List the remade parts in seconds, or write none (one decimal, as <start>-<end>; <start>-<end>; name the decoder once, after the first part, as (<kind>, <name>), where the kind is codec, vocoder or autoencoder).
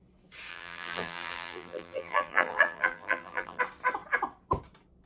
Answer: 0.5-3.6 (vocoder, BigVGAN v2)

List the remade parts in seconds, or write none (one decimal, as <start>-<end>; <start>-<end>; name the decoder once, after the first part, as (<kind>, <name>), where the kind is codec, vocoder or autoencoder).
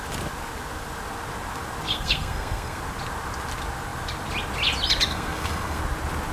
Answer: 1.9-2.8 (codec, SNAC); 5.1-5.8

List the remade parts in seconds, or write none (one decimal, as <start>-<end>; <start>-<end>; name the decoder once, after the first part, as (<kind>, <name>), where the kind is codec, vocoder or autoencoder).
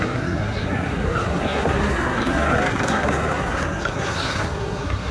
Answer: 0.0-5.1 (codec, SNAC)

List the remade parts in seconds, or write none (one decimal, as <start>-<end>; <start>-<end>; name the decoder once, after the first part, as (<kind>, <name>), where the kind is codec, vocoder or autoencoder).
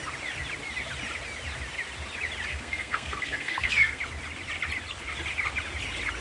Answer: 2.5-4.0 (codec, SNAC)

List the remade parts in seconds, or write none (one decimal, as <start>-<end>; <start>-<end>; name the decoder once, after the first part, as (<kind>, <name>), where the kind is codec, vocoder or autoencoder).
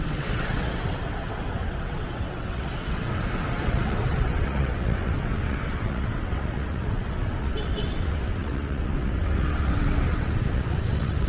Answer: 0.0-11.3 (vocoder, WaveNeXt)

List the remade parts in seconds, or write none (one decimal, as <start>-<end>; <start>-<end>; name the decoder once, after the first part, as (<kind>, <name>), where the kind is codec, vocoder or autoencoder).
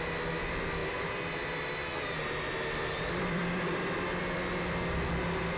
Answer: 0.8-4.2 (vocoder, BigVGAN v2)